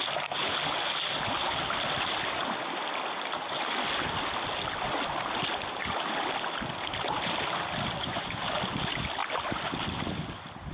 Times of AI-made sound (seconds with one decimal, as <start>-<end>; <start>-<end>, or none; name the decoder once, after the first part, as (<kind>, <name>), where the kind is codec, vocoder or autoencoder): 8.0-8.5 (vocoder, Vocos)